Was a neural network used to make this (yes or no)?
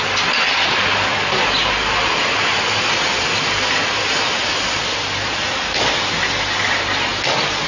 no